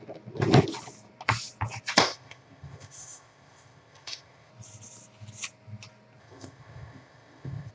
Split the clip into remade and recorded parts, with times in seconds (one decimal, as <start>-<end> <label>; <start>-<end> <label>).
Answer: 0.0-2.0 recorded; 2.0-4.5 remade; 4.5-6.2 recorded; 6.2-7.7 remade